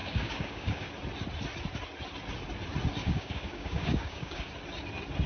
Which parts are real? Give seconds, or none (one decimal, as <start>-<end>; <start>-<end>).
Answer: 0.9-3.0; 4.5-5.3